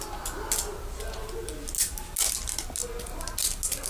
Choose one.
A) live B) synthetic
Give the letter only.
A